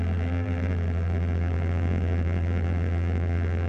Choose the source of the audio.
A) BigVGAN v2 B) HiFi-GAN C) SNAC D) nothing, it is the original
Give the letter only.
A